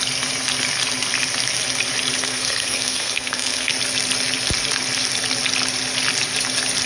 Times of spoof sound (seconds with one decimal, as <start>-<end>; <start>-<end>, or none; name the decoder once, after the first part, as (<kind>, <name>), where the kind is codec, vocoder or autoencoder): 2.2-3.7 (codec, SNAC)